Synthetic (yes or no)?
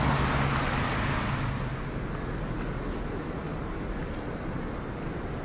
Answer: no